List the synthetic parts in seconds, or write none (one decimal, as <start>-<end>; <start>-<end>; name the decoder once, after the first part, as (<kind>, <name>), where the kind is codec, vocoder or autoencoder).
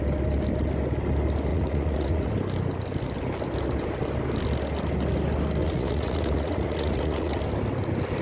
1.5-2.3 (vocoder, Vocos); 5.6-7.4